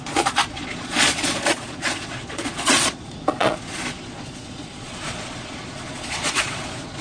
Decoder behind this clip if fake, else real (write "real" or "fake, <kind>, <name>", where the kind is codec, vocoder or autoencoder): fake, vocoder, Vocos